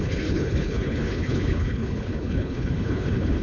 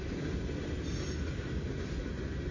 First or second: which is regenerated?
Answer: first